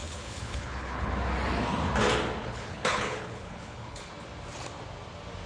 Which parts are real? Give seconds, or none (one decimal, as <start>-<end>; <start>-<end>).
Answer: 1.1-2.4; 4.1-5.5